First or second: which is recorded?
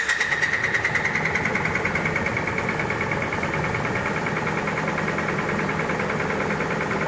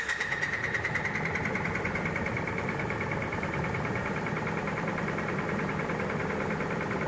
first